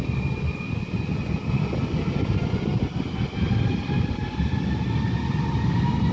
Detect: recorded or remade recorded